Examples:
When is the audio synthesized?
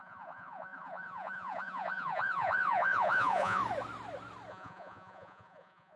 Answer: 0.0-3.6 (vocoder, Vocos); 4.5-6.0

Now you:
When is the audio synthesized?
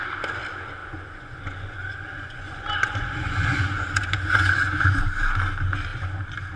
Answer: 0.8-4.8 (vocoder, Vocos)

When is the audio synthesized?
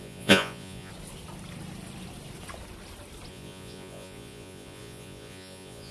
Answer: 0.0-0.9 (vocoder, Vocos); 3.3-5.9